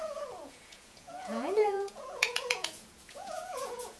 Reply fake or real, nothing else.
fake